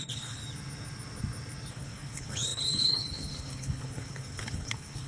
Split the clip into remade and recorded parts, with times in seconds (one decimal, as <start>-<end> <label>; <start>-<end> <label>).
0.0-0.4 remade; 0.4-1.7 recorded; 1.7-5.1 remade